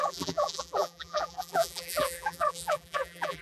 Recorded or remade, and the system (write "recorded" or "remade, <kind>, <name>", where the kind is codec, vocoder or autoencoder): remade, vocoder, BigVGAN v2